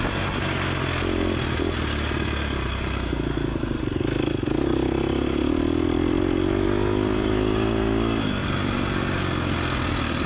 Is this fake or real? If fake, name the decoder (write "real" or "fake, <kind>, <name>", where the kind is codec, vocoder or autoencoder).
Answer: real